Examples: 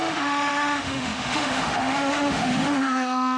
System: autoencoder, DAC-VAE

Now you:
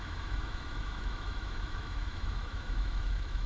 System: autoencoder, DAC-VAE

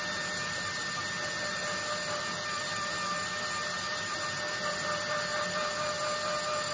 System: none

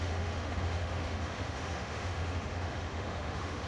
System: autoencoder, DAC-VAE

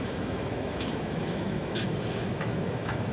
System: autoencoder, DAC-VAE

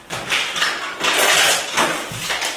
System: none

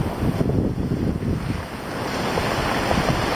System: none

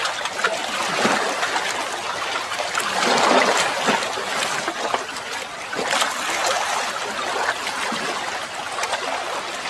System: none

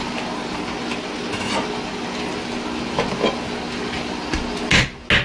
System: none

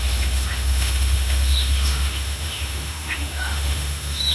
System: autoencoder, DAC-VAE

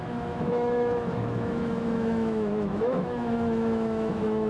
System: autoencoder, DAC-VAE